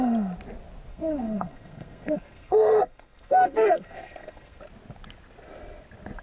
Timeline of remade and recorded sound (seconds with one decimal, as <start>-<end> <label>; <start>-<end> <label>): 0.0-0.9 recorded; 0.9-4.6 remade; 4.6-6.2 recorded